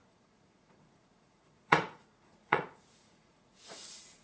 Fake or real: fake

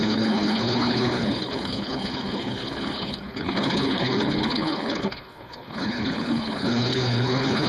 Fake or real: fake